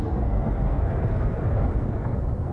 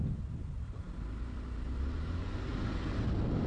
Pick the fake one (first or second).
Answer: first